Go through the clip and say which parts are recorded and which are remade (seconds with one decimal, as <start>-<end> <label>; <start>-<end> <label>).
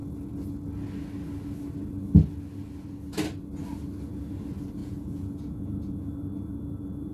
0.0-4.8 recorded; 4.8-6.1 remade; 6.1-7.1 recorded